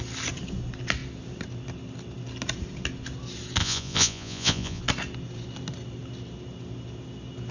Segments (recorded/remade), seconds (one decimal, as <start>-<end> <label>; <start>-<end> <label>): 0.0-3.6 recorded; 3.6-4.8 remade; 4.8-7.5 recorded

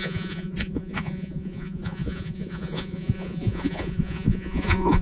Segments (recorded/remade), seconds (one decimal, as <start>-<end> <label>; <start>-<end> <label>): 0.0-5.0 remade